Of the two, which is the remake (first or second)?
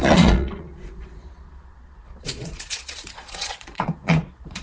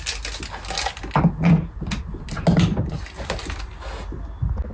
first